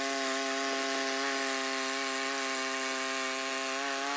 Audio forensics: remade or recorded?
recorded